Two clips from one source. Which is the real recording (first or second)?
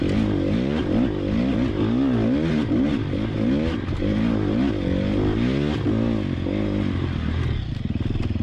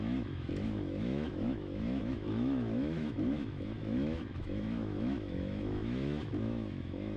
first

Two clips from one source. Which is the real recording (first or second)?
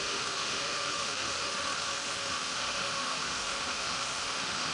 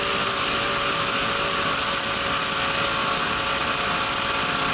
second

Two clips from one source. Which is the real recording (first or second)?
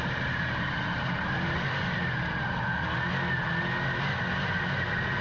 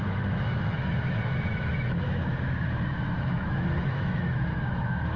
first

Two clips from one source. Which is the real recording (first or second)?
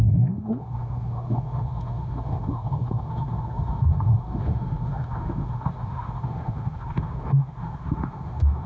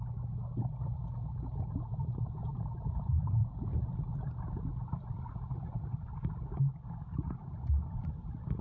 second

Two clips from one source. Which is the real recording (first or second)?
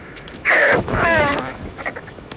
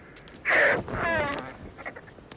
second